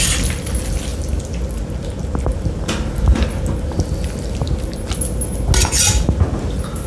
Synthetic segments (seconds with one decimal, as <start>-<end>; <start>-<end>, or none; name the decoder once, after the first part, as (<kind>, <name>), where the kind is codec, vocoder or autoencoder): none